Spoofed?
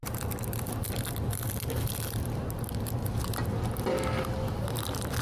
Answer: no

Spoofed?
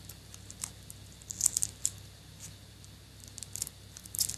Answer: no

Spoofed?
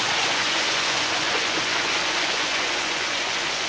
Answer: yes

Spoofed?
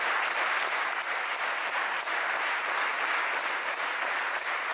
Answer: no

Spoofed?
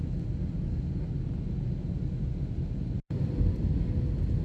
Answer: no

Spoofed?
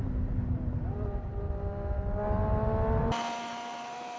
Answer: yes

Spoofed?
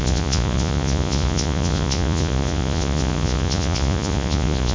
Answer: yes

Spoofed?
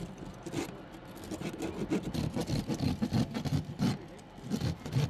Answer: no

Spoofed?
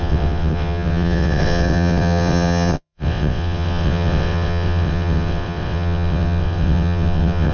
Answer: yes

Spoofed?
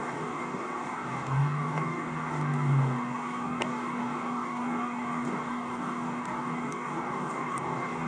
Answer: yes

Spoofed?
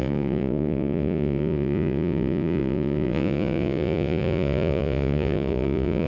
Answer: yes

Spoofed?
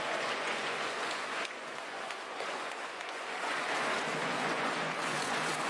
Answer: yes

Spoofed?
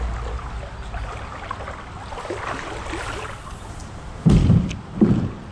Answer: no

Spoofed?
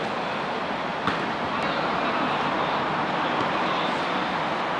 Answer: no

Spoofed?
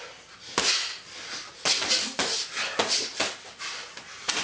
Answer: no